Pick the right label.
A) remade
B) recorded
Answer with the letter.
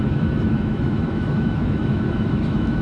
A